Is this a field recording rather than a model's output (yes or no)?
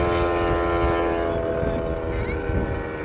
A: yes